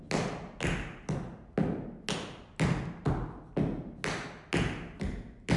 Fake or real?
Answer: real